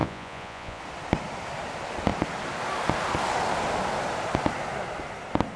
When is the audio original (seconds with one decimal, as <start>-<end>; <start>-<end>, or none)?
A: 0.8-5.6